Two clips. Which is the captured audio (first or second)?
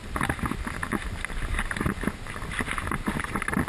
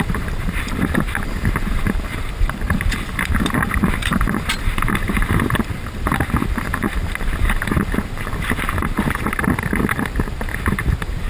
first